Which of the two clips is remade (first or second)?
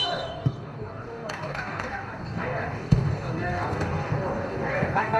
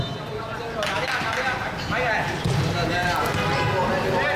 first